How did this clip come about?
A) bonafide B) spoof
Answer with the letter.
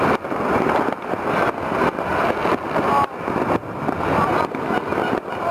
A